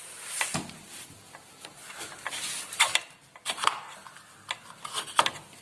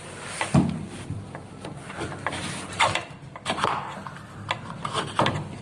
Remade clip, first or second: second